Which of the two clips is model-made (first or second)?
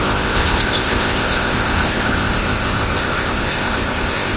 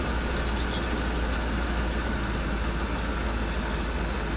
first